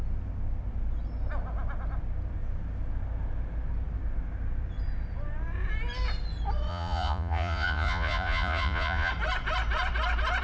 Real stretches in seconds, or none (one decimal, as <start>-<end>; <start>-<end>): 0.0-6.7; 9.1-10.4